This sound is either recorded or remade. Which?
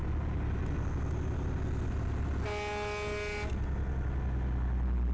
recorded